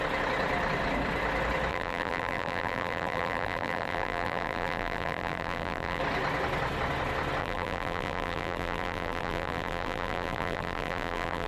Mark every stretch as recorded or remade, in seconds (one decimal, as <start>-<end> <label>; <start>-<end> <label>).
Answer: 0.0-1.7 recorded; 1.7-6.0 remade; 6.0-7.4 recorded; 7.4-11.5 remade